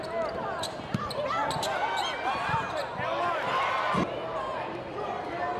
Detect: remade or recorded recorded